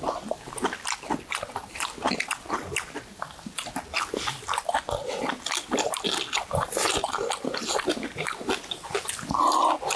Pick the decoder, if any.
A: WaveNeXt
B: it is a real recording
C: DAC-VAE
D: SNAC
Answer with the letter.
B